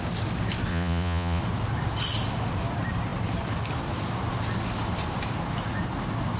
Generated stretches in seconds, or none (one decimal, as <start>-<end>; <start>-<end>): 0.7-1.4